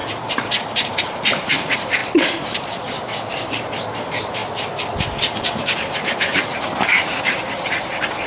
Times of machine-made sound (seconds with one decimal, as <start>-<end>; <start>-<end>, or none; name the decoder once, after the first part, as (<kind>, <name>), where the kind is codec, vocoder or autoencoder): 0.0-2.0 (vocoder, BigVGAN v2); 3.6-4.4; 5.2-8.3